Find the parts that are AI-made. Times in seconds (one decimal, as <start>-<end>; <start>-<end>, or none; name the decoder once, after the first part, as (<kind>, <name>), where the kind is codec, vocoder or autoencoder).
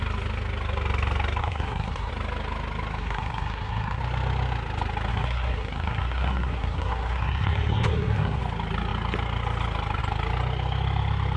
1.4-2.1 (codec, SNAC); 3.0-4.0; 5.1-8.4